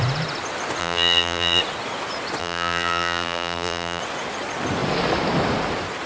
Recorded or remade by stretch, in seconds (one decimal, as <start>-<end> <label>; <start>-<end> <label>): 0.0-0.8 recorded; 0.8-1.6 remade; 1.6-2.4 recorded; 2.4-4.0 remade; 4.0-6.1 recorded